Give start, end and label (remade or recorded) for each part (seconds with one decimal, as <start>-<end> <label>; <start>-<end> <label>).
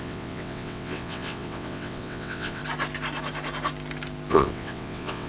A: 0.0-2.6 remade; 2.6-4.3 recorded; 4.3-5.3 remade